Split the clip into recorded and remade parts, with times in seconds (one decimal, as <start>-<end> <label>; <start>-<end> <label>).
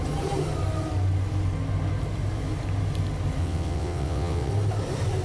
0.0-3.4 recorded; 3.4-4.5 remade; 4.5-5.2 recorded